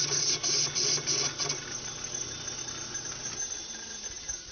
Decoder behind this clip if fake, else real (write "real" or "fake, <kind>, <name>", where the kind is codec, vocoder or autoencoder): real